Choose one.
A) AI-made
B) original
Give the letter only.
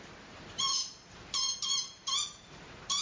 A